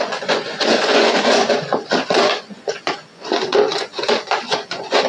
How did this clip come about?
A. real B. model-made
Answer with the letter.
B